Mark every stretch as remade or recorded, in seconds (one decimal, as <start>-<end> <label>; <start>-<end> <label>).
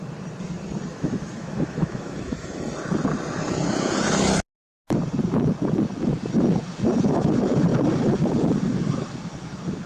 0.0-0.9 recorded; 0.9-2.6 remade; 2.6-9.9 recorded